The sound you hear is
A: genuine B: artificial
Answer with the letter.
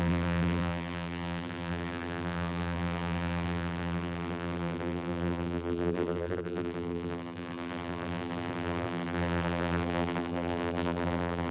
B